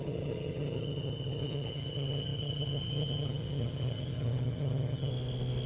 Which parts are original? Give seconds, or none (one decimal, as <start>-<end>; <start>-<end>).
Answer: 5.1-5.7